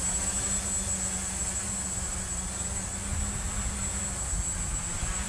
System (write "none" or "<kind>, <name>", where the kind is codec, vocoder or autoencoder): none